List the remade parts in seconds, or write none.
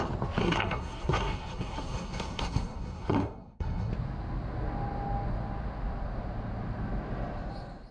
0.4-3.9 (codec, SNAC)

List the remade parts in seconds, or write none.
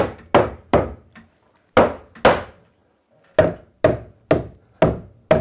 none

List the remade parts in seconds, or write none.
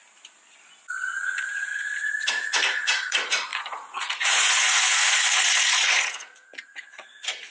1.2-1.7 (vocoder, Vocos); 2.3-7.5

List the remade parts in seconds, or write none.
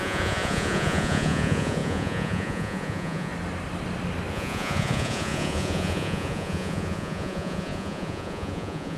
0.0-3.3 (vocoder, Vocos); 4.3-9.0